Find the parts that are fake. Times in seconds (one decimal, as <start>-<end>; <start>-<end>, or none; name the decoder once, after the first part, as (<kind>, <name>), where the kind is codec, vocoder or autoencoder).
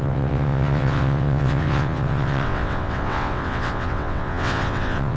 0.0-5.2 (vocoder, WaveNeXt)